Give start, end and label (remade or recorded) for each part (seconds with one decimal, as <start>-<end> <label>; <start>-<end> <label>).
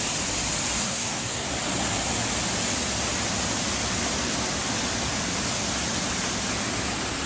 0.0-0.8 recorded; 0.8-1.5 remade; 1.5-7.3 recorded